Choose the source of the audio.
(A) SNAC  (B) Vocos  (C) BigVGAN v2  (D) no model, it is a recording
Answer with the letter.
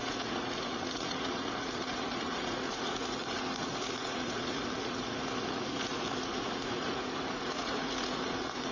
B